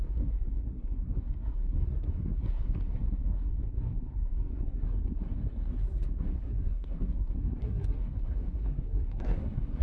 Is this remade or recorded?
remade